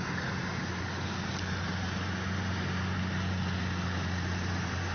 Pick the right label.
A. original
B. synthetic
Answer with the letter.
A